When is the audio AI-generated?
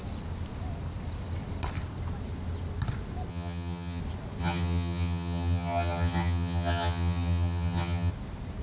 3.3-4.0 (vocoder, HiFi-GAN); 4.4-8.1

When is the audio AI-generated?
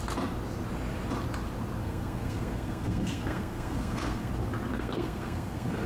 1.8-4.3 (codec, SNAC); 4.7-5.9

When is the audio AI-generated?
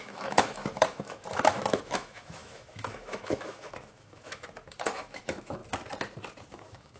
0.0-5.6 (autoencoder, DAC-VAE); 6.5-7.0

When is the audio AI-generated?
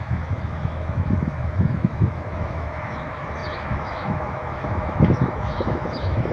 0.0-6.3 (autoencoder, DAC-VAE)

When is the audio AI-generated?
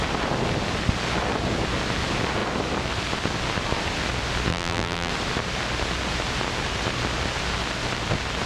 4.5-5.1 (vocoder, BigVGAN v2)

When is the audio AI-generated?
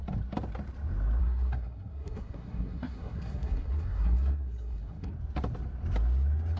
1.2-5.1 (codec, SNAC)